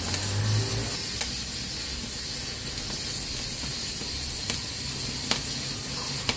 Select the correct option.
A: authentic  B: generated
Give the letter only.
A